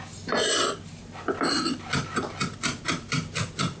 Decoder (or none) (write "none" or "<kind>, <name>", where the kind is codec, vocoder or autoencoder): none